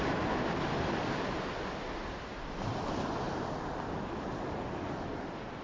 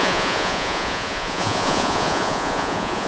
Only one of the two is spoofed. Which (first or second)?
second